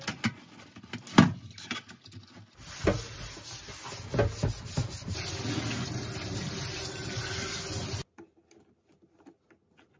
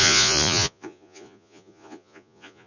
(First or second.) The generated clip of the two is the second